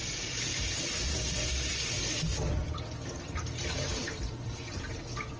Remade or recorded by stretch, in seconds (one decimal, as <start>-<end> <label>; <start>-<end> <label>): 0.0-5.4 remade